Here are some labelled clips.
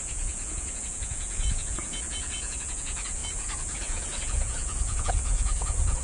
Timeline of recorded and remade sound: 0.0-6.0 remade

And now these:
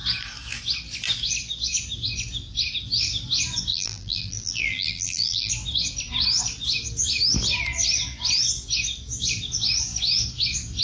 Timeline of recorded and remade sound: 0.0-3.7 recorded; 3.7-5.5 remade; 5.5-10.8 recorded

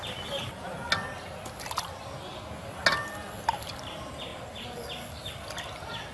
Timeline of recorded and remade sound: 0.0-6.1 recorded

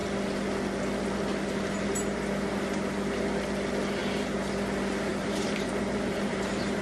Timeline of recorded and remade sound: 0.0-4.0 recorded; 4.0-4.5 remade; 4.5-5.1 recorded; 5.1-6.8 remade